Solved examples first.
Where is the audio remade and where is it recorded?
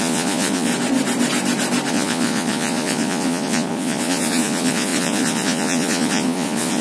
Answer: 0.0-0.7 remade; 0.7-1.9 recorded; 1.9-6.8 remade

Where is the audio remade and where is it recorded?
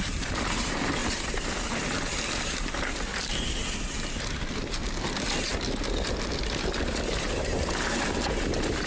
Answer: 0.0-1.0 recorded; 1.0-1.6 remade; 1.6-3.1 recorded; 3.1-3.8 remade; 3.8-5.5 recorded; 5.5-7.7 remade; 7.7-8.9 recorded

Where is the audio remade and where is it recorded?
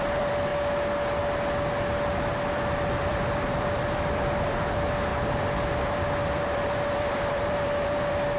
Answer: 0.0-0.5 remade; 0.5-2.5 recorded; 2.5-8.4 remade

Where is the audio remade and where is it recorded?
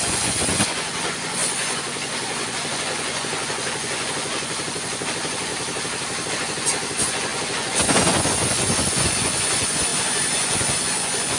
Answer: 0.0-5.5 remade; 5.5-6.3 recorded; 6.3-11.4 remade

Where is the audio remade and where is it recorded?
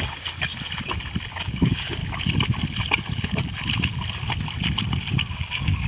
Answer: 0.0-0.5 remade; 0.5-1.4 recorded; 1.4-2.0 remade; 2.0-5.2 recorded; 5.2-5.9 remade